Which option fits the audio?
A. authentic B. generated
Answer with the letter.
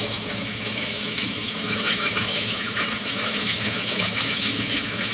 B